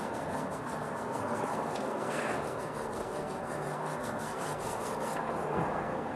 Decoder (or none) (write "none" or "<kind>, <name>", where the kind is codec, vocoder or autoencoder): codec, SNAC